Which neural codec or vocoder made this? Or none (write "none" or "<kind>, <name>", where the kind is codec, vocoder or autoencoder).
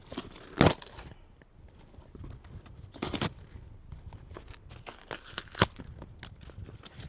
none